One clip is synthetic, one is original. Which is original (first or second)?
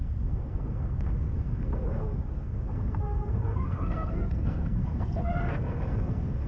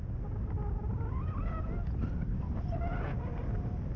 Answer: second